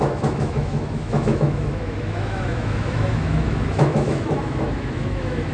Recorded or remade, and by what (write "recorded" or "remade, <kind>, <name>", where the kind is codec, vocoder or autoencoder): remade, autoencoder, DAC-VAE